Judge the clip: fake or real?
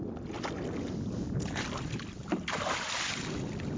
real